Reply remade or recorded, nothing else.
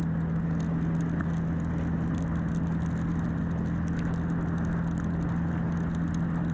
recorded